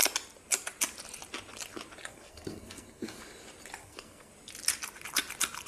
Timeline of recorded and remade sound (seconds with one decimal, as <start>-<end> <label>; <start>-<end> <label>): 0.0-2.1 recorded; 2.1-3.2 remade; 3.2-3.8 recorded; 3.8-4.3 remade; 4.3-5.7 recorded